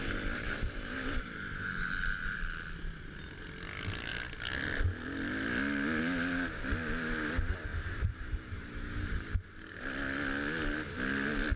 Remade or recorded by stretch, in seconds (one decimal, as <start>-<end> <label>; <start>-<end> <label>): 0.0-2.4 remade; 2.4-7.7 recorded; 7.7-8.3 remade; 8.3-11.6 recorded